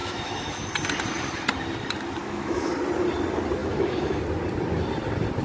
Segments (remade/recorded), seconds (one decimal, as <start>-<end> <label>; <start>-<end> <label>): 0.0-0.7 remade; 0.7-2.2 recorded; 2.2-2.7 remade; 2.7-3.6 recorded; 3.6-4.2 remade; 4.2-5.4 recorded